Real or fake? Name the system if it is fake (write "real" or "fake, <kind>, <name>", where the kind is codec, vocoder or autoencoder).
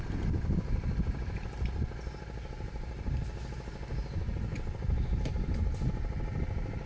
real